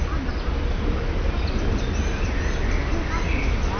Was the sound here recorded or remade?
recorded